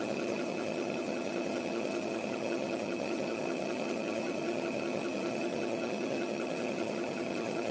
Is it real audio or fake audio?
fake